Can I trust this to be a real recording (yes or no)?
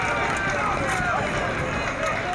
yes